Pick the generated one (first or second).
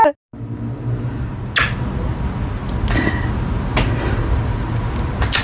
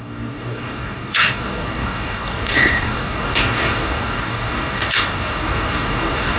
second